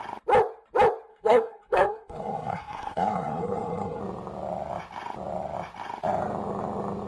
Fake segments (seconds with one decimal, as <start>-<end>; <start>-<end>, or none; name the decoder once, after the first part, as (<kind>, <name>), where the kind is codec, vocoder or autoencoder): 1.1-4.0 (codec, SNAC)